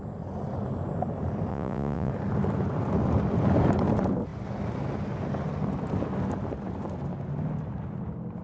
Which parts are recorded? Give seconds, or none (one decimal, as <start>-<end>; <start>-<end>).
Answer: 0.0-1.5; 2.1-8.4